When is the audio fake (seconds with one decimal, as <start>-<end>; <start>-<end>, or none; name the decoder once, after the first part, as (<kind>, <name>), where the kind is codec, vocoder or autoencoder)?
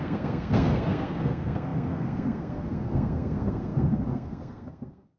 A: 0.0-5.2 (codec, SNAC)